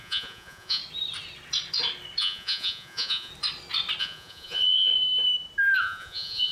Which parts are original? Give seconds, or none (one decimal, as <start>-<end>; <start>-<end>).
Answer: 0.8-2.2; 3.3-4.0; 4.9-5.8